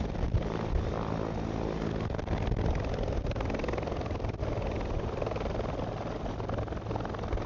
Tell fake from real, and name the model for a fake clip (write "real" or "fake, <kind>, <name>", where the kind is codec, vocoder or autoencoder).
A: real